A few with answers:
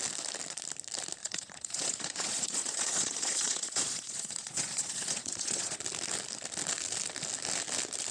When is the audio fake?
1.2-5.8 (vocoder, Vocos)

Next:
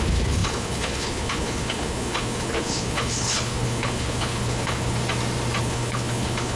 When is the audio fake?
0.0-5.0 (codec, HILCodec); 5.6-6.6

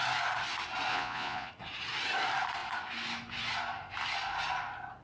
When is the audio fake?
0.9-1.5 (vocoder, Vocos)

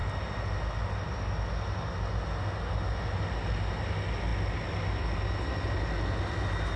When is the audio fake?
none

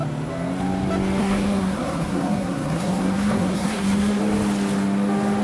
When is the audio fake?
1.2-4.2 (codec, SNAC)

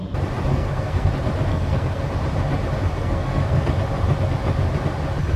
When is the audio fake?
0.5-1.1 (codec, SNAC); 1.5-2.0; 3.0-3.7

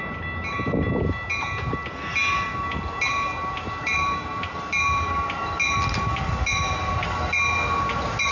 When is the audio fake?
none